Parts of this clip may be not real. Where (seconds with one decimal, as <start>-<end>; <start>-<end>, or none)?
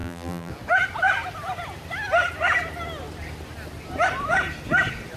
0.0-0.5